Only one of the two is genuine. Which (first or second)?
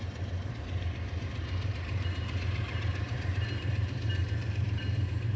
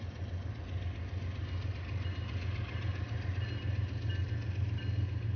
second